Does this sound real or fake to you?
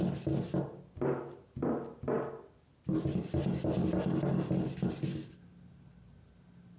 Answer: real